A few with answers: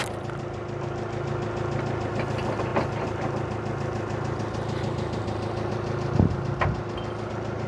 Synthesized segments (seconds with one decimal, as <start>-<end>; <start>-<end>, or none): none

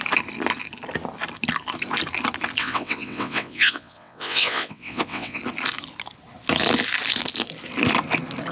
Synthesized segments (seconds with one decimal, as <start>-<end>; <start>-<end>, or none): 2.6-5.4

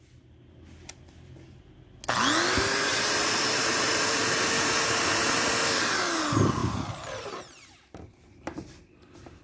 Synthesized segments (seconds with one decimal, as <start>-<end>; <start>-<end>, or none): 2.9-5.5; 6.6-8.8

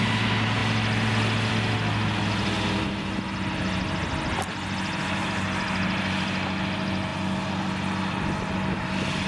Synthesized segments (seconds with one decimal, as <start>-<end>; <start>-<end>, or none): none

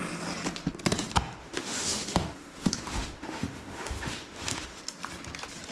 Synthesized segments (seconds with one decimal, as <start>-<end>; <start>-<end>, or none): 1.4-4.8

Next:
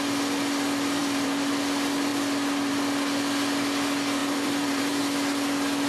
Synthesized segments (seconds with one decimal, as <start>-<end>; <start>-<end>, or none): 1.0-1.5; 4.2-5.0

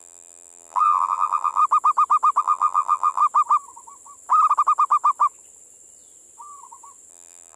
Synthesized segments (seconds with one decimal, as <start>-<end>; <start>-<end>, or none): 0.0-1.6; 2.4-3.2; 7.1-7.6